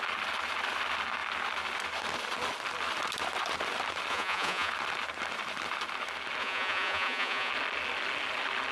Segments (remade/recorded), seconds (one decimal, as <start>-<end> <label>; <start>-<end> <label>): 0.0-4.1 recorded; 4.1-4.7 remade; 4.7-6.4 recorded; 6.4-7.5 remade; 7.5-8.7 recorded